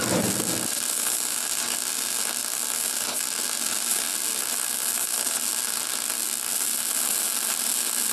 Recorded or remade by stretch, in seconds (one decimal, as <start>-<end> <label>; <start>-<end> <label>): 0.0-8.1 recorded